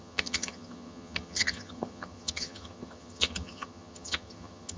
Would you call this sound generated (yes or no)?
yes